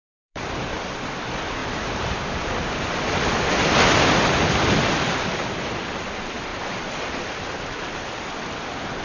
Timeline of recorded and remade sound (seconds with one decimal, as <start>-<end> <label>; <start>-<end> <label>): 0.0-0.9 remade; 0.9-1.6 recorded; 1.6-2.5 remade; 2.5-6.5 recorded; 6.5-7.4 remade; 7.4-9.0 recorded